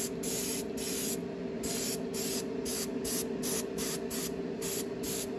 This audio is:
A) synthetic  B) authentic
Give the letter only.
B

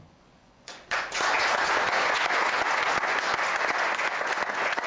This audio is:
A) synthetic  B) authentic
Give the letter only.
A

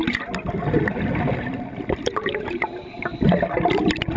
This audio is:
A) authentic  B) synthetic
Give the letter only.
A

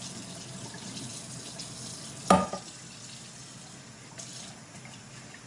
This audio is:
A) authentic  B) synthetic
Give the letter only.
A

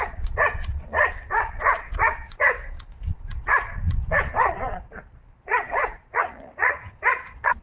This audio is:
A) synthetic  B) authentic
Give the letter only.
A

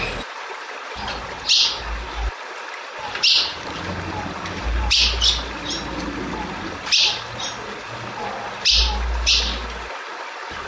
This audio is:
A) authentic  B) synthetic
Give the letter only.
A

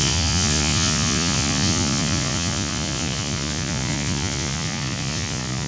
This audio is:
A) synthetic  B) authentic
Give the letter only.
A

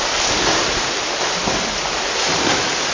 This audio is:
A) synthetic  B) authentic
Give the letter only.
B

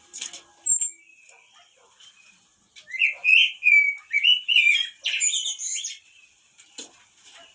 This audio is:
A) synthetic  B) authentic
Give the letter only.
B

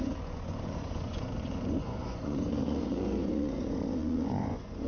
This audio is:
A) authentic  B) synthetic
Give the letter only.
B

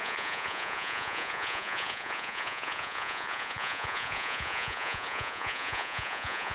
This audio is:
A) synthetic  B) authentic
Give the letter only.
A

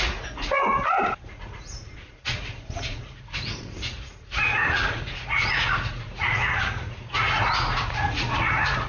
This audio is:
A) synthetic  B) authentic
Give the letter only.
A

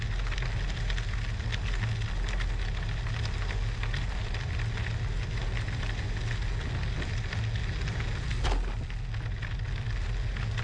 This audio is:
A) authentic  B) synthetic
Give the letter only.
A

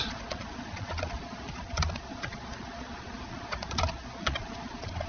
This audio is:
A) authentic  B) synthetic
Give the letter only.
B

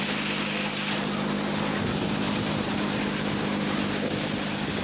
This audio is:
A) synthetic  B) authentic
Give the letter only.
B